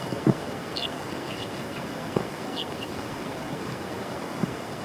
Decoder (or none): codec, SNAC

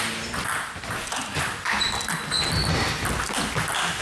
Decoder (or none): none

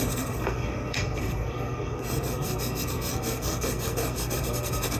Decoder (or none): codec, SNAC